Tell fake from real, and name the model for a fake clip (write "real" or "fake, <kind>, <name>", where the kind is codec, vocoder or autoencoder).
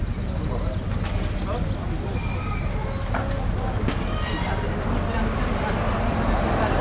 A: real